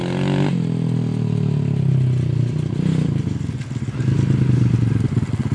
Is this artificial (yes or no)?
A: no